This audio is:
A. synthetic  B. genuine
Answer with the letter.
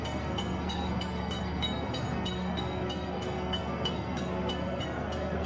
A